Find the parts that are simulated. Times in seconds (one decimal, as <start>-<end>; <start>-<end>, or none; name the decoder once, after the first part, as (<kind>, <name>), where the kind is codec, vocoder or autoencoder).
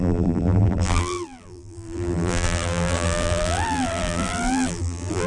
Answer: 0.0-5.3 (vocoder, BigVGAN v2)